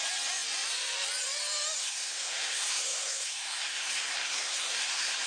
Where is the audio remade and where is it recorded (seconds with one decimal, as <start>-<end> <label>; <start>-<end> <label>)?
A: 0.0-1.8 recorded; 1.8-5.3 remade